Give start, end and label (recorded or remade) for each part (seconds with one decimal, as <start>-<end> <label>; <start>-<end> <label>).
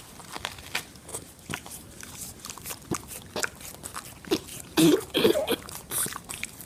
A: 0.0-1.1 recorded; 1.1-2.1 remade; 2.1-4.5 recorded; 4.5-5.8 remade; 5.8-6.7 recorded